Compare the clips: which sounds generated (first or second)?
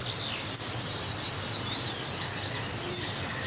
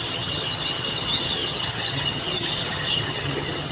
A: second